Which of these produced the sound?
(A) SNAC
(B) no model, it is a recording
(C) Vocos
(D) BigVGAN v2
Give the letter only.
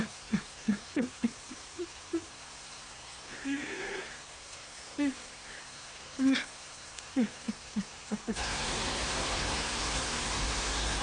A